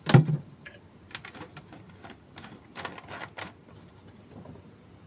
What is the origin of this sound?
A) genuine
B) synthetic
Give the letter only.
A